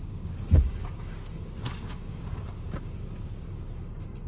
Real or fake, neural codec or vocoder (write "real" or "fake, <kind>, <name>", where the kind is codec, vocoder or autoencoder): fake, codec, DAC